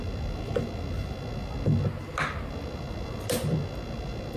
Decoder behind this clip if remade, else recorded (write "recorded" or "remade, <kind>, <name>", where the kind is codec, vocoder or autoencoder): recorded